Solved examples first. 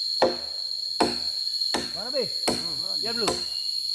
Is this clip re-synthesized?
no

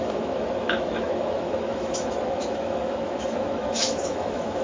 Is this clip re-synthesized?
yes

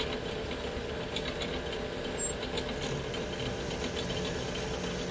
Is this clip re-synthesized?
no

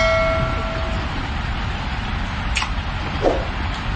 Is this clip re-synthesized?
no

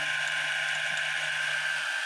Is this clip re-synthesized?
no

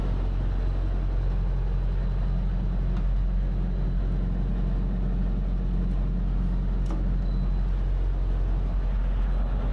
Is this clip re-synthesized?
no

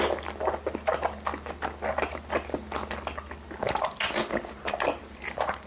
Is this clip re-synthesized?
no